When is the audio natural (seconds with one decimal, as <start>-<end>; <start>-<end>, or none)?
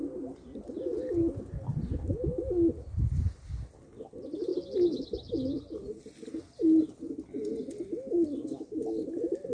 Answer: 0.0-9.5